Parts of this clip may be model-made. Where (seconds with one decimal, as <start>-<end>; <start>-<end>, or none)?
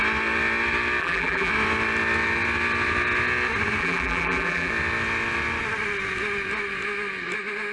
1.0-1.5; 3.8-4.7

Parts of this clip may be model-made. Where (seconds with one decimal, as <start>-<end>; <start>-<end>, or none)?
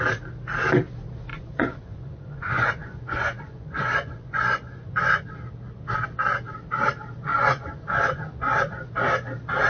1.3-5.3; 7.3-8.2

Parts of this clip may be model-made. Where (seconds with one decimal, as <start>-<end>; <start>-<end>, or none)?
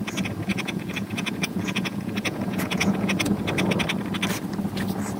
0.5-3.4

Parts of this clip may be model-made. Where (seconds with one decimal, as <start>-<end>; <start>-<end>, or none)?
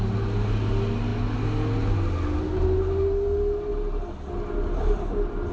none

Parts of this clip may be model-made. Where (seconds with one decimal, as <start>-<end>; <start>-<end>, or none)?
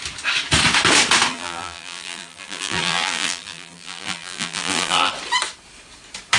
1.3-5.1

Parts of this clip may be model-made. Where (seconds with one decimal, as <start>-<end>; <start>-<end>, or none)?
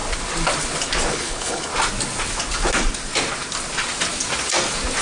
1.1-1.7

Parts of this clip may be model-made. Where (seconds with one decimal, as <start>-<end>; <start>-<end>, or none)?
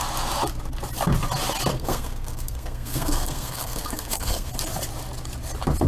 1.7-4.5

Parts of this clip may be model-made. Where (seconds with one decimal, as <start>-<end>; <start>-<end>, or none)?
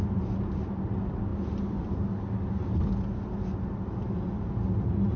none